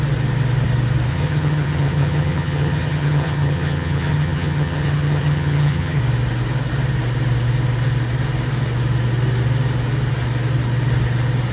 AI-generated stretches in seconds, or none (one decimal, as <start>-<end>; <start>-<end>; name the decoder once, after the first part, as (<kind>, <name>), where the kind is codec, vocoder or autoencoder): 1.1-6.0 (vocoder, HiFi-GAN)